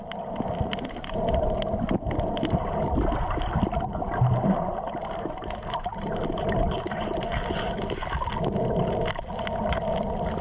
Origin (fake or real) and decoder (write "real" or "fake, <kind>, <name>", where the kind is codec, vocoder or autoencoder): real